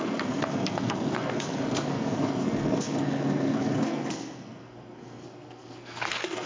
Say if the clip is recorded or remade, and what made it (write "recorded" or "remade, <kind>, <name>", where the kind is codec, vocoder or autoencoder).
remade, codec, SNAC